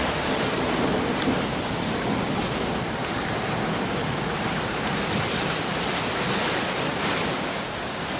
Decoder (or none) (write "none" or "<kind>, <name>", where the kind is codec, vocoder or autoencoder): none